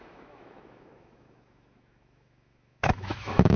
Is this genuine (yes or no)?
no